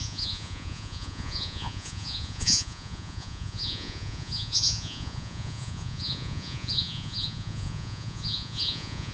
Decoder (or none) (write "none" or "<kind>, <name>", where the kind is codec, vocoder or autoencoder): vocoder, Vocos